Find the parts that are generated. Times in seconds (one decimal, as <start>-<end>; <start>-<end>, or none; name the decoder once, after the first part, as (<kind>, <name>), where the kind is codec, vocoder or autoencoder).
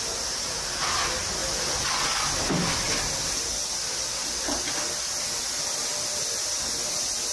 none